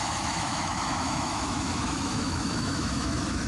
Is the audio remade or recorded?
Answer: remade